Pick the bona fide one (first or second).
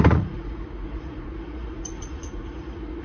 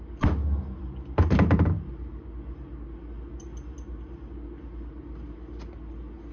second